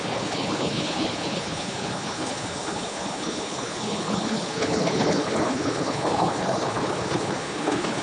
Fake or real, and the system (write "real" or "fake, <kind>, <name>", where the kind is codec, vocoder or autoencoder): fake, codec, HILCodec